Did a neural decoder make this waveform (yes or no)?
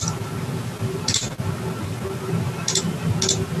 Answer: no